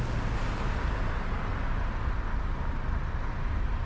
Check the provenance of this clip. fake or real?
real